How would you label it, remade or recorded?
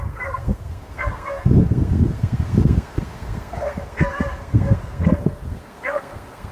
remade